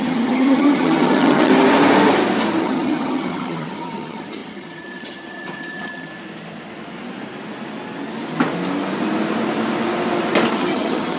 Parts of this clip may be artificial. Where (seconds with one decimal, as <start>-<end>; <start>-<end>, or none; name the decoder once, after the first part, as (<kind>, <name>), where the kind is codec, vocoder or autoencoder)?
0.0-1.5 (vocoder, HiFi-GAN); 2.6-6.1; 10.5-11.2

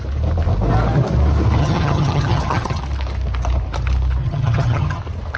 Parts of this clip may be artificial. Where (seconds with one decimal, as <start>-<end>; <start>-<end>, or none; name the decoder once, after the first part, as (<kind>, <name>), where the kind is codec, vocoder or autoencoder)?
1.6-2.8 (vocoder, HiFi-GAN); 4.2-5.0

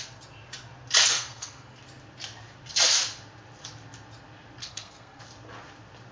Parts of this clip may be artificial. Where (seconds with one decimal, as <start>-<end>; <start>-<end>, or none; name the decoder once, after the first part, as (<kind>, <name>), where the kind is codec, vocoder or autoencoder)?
1.1-1.8 (codec, SNAC); 4.6-5.2

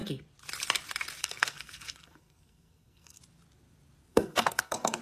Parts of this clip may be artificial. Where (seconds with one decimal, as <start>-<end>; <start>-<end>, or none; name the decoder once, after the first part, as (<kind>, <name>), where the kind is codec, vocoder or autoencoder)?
1.2-3.2 (codec, SNAC); 4.1-5.0

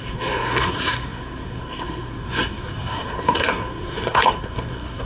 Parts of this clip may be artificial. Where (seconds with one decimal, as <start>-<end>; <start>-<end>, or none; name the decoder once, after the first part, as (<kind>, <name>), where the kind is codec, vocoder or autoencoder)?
0.0-5.1 (codec, SNAC)

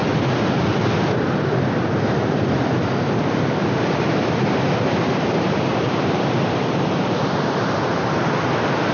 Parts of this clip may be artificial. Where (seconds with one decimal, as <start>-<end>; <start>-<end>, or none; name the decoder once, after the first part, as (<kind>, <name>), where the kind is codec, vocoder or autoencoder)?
3.6-8.2 (vocoder, BigVGAN v2)

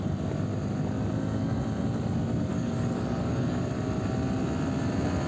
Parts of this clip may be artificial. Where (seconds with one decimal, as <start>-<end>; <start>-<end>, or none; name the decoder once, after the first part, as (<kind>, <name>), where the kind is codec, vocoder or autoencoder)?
2.5-3.7 (codec, DAC)

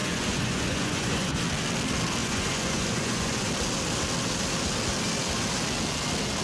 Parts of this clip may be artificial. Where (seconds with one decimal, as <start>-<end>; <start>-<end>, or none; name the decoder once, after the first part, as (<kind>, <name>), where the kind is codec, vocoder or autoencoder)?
0.0-1.4 (vocoder, Vocos); 2.2-3.5